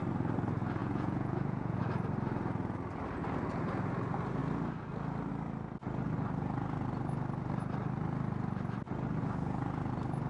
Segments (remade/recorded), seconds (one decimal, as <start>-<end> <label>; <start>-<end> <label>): 0.0-0.8 recorded; 0.8-1.8 remade; 1.8-10.3 recorded